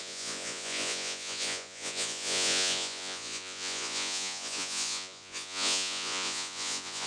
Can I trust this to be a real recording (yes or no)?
no